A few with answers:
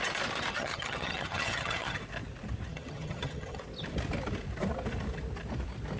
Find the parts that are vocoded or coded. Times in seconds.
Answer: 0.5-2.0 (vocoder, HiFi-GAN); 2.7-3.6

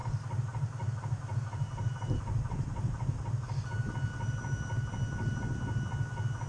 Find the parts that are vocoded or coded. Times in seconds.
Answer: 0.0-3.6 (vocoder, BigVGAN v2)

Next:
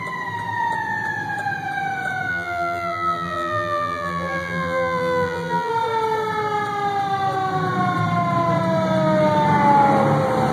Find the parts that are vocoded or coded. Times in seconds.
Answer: 2.3-5.7 (vocoder, BigVGAN v2)